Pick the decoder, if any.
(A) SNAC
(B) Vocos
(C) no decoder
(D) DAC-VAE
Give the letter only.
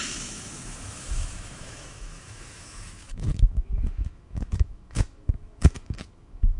D